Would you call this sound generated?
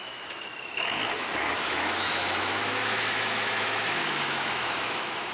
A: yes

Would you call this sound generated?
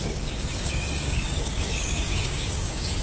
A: yes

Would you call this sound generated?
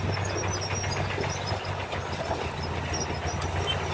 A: no